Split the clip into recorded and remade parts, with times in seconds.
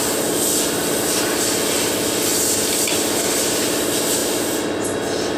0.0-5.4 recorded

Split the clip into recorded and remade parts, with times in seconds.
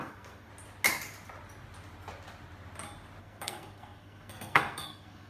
0.0-0.5 remade; 0.5-3.2 recorded; 3.2-5.3 remade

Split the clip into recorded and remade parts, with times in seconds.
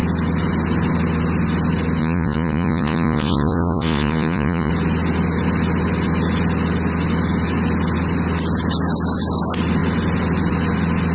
0.0-2.0 recorded; 2.0-4.7 remade; 4.7-11.1 recorded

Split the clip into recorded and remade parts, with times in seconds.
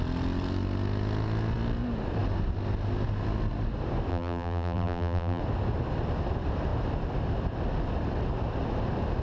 0.0-4.1 recorded; 4.1-5.4 remade; 5.4-9.2 recorded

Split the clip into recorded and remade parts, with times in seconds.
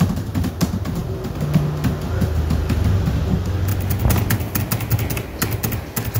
0.0-6.2 recorded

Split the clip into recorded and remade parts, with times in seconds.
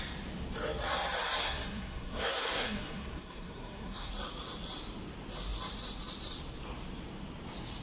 0.0-1.4 recorded; 1.4-4.1 remade; 4.1-7.8 recorded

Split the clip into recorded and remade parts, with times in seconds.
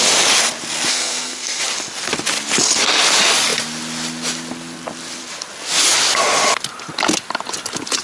0.0-0.9 recorded; 0.9-1.6 remade; 1.6-8.0 recorded